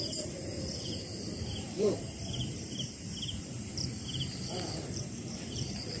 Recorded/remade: remade